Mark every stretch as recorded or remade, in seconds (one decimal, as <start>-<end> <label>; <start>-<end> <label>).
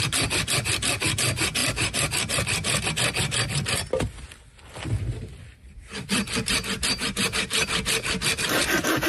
0.0-9.1 recorded